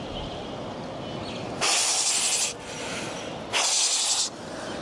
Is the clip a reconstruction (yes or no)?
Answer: no